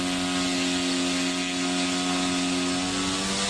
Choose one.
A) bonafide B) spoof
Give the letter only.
A